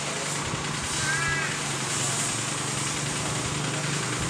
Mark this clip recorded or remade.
recorded